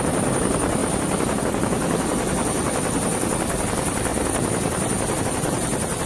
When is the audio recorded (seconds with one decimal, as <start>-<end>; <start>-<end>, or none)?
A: 0.8-1.4; 4.1-5.2